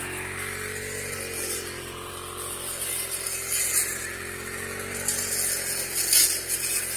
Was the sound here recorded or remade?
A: recorded